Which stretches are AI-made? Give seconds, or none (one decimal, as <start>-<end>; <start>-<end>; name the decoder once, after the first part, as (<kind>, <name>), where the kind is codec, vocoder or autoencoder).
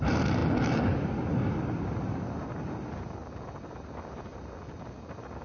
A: none